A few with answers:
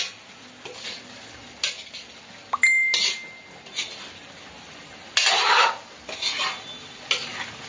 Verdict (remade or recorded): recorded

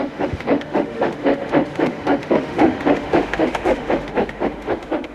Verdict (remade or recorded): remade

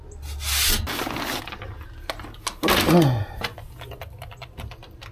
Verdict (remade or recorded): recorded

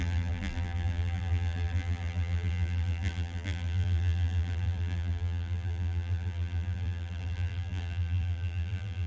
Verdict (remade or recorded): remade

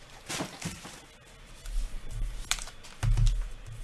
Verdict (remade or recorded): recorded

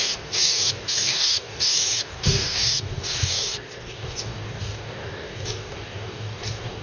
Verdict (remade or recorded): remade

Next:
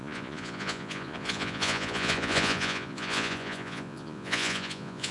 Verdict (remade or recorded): remade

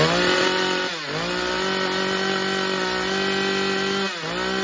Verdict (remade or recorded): recorded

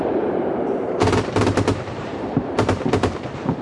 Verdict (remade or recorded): remade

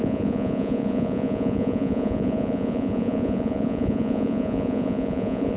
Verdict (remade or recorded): remade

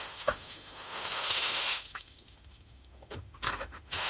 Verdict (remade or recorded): remade